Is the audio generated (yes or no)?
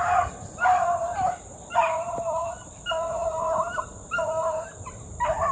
yes